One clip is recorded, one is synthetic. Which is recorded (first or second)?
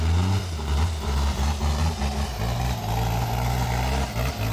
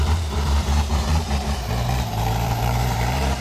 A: first